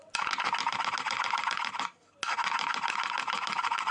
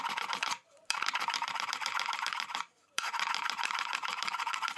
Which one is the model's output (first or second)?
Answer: second